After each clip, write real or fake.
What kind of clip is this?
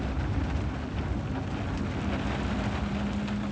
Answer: real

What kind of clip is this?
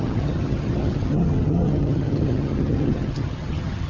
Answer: fake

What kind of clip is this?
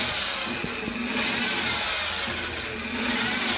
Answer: real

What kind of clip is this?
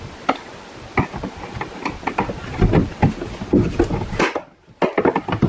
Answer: real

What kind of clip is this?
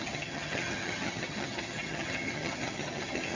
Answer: fake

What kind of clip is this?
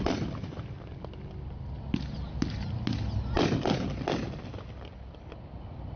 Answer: real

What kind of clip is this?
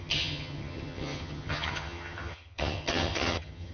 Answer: fake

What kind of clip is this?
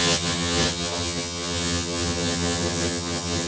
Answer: fake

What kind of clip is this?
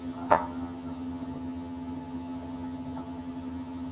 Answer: fake